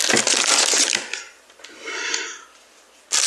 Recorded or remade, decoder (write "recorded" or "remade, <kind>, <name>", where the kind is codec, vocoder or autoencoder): recorded